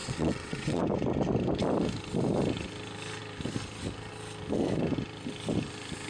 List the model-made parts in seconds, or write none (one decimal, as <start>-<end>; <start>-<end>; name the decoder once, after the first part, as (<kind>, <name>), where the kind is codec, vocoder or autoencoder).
0.0-0.8 (vocoder, WaveNeXt)